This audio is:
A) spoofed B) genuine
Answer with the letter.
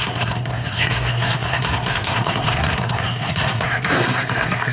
A